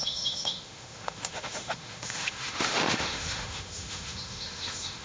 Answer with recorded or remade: remade